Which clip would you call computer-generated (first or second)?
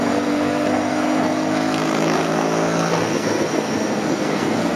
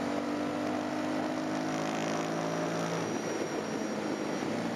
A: first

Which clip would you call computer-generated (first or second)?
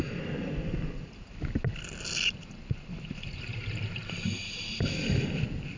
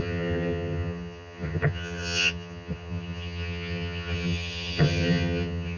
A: second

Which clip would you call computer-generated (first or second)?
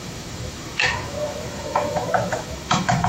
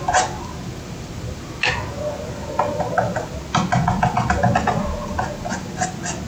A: first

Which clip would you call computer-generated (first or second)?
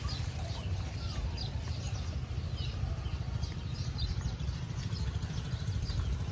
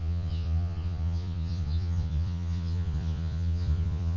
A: second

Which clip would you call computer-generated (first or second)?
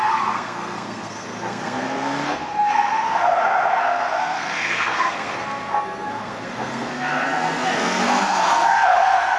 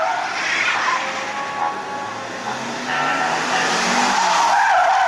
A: first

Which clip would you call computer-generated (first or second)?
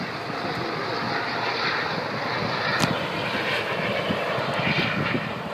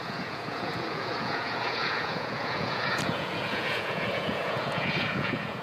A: second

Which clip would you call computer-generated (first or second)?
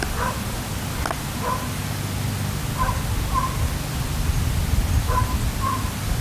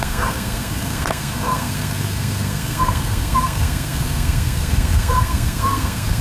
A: second